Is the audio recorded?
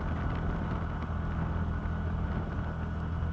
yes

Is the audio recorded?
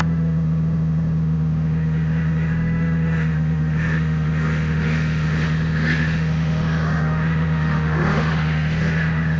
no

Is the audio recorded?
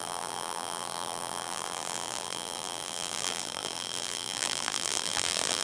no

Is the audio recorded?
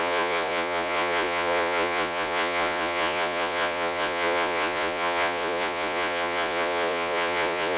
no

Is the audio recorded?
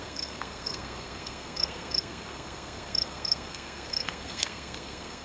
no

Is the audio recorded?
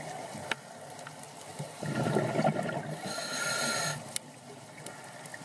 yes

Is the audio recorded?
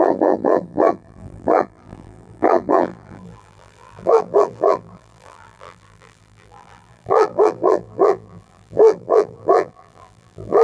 no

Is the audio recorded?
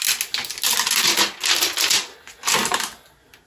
yes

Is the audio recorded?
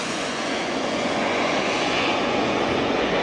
no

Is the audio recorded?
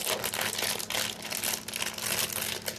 yes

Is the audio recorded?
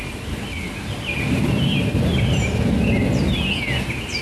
yes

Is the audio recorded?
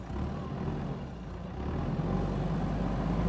yes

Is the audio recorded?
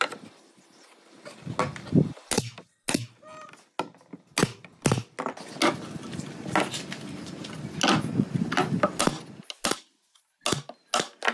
yes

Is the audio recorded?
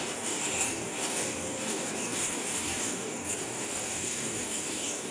no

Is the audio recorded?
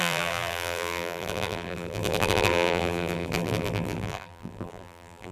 no